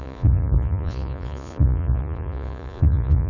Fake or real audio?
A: fake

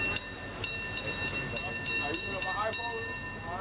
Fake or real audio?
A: real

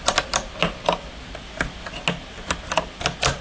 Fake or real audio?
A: real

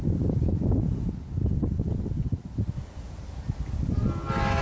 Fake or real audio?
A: real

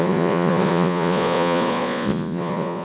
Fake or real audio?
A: fake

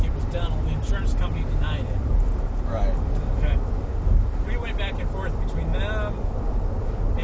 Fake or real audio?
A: real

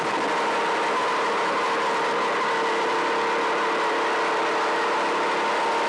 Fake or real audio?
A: real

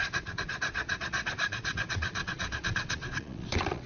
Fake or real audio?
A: fake